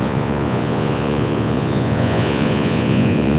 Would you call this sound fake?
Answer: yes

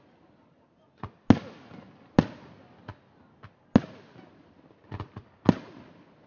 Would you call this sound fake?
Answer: no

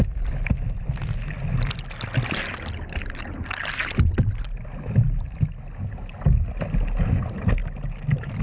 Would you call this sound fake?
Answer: no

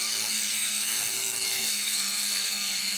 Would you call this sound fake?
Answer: yes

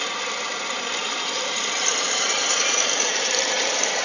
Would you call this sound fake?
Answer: yes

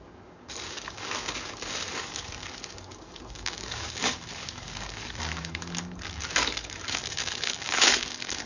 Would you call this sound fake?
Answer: yes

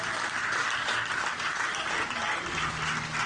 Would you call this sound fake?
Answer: no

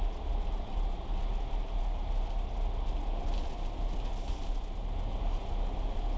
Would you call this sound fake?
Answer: no